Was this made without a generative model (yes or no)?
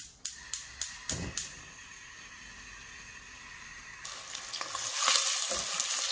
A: yes